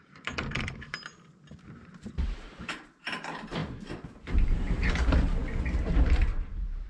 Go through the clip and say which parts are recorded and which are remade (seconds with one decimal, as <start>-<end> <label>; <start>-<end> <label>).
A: 0.0-5.4 remade; 5.4-5.9 recorded; 5.9-6.9 remade